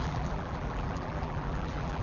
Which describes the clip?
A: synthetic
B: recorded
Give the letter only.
A